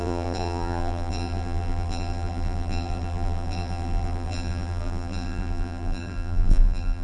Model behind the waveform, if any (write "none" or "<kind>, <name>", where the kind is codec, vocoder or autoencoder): vocoder, BigVGAN v2